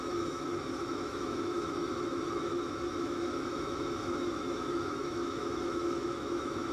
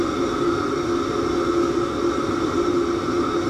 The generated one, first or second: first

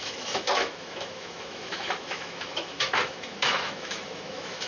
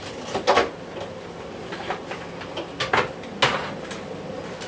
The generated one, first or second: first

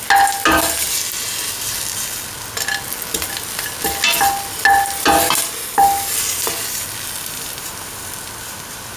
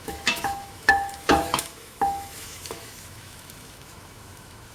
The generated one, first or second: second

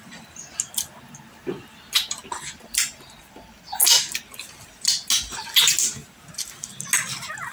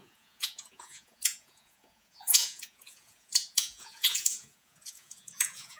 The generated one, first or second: second